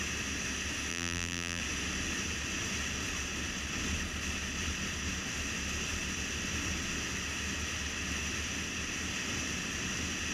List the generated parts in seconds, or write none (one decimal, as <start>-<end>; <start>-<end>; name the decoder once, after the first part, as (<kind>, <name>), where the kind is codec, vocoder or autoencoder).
0.9-1.6 (vocoder, BigVGAN v2)